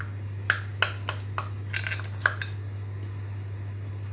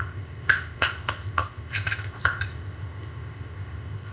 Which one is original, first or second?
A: first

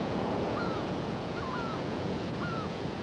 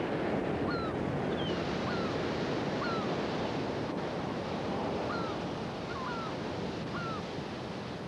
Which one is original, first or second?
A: second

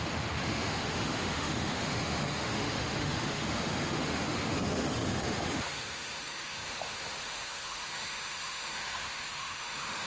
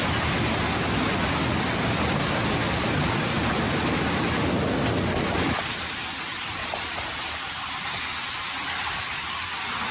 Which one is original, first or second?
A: second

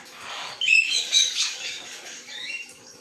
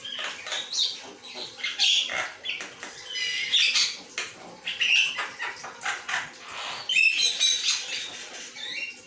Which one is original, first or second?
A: second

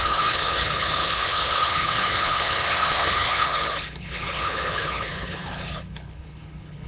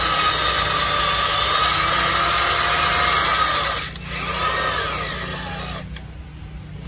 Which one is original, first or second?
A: second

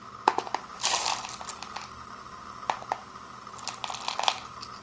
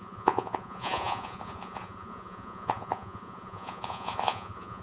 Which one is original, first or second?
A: first